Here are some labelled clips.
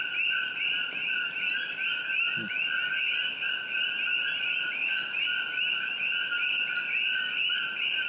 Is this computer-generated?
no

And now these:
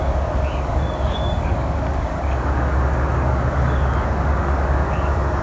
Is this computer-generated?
yes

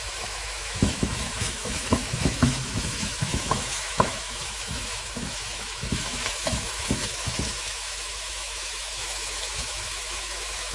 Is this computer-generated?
yes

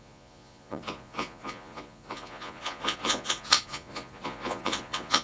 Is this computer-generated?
yes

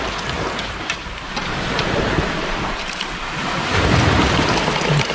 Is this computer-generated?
yes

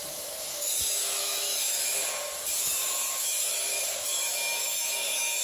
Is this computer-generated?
yes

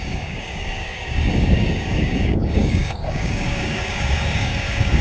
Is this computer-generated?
yes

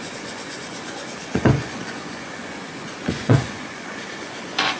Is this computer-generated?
yes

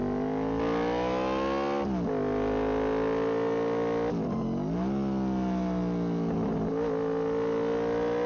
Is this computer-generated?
no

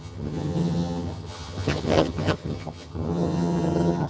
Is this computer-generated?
yes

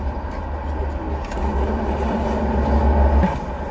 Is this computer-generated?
no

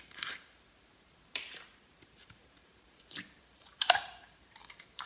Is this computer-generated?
yes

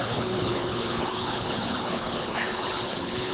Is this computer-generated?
yes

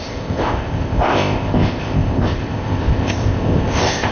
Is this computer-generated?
yes